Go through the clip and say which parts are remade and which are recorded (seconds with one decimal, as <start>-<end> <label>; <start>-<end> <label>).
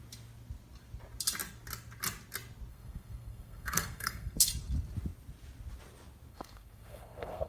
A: 0.0-2.7 recorded; 2.7-4.5 remade; 4.5-6.3 recorded; 6.3-7.5 remade